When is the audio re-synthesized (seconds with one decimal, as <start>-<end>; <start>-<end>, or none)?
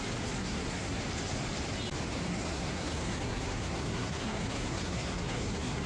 0.4-1.0; 2.3-5.9